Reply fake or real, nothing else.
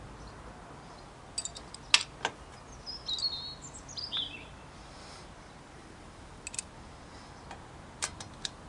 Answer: real